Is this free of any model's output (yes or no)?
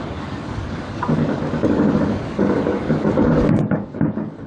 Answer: no